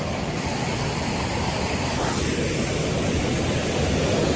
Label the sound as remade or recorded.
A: recorded